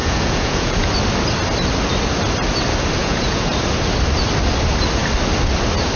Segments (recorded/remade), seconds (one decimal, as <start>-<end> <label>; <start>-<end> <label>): 0.0-0.9 remade; 0.9-3.0 recorded; 3.0-3.5 remade; 3.5-6.0 recorded